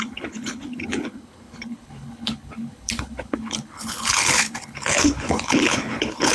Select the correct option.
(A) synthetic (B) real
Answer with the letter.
A